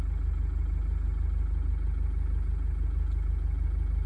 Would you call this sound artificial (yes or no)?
no